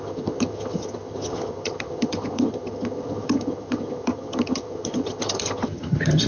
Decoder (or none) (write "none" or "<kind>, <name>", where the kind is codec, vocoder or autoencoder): vocoder, HiFi-GAN